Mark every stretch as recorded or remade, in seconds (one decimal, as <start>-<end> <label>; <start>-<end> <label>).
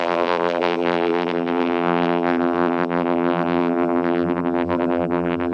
0.0-5.5 remade